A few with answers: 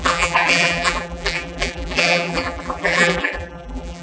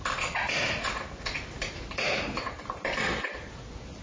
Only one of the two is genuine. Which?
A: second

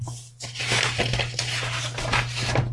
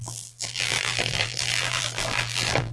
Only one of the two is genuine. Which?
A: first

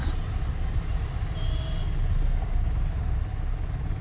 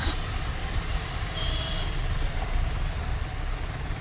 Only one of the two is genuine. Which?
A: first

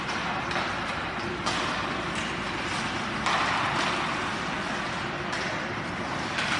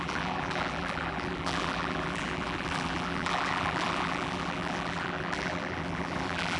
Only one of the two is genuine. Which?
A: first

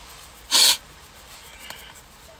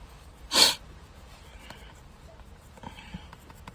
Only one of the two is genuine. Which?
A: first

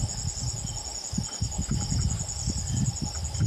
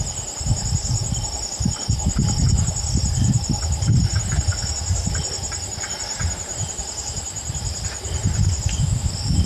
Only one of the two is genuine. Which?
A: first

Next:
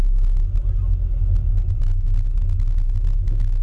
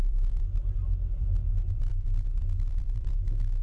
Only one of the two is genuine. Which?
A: first